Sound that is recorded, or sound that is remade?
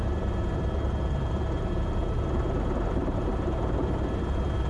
remade